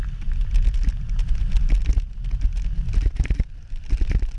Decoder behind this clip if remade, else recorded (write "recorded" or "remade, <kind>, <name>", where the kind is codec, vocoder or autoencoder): recorded